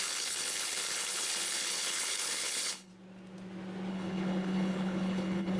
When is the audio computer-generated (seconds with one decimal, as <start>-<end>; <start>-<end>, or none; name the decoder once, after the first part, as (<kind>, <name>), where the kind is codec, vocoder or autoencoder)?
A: 0.0-2.9 (codec, HILCodec); 3.9-5.6